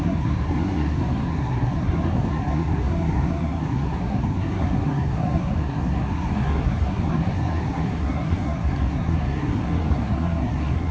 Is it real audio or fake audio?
fake